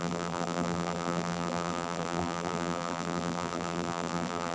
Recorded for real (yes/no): no